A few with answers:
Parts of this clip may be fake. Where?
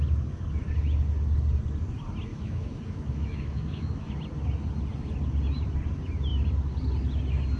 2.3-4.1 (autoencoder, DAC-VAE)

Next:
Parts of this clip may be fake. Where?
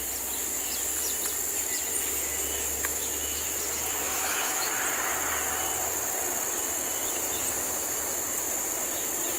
2.9-3.4 (autoencoder, DAC-VAE); 4.0-4.7